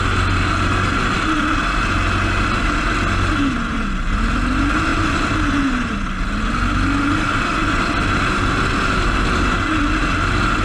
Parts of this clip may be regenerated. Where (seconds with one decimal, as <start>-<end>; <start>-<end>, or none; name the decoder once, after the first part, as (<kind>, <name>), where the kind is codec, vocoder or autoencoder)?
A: none